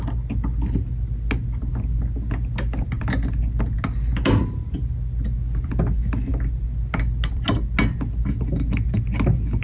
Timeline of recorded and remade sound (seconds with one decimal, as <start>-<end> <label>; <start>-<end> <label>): 0.0-9.6 recorded